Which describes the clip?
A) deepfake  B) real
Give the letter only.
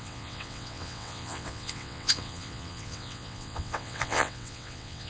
A